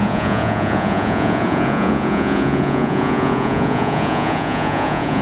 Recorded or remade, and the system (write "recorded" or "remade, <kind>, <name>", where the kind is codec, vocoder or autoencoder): remade, vocoder, Vocos